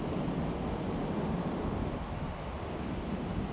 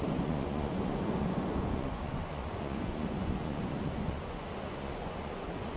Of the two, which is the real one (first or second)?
first